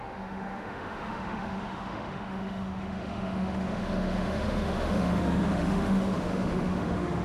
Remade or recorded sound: remade